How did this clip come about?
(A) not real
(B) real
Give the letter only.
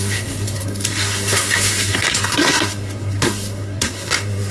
A